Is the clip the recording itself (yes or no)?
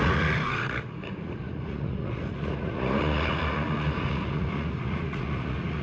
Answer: no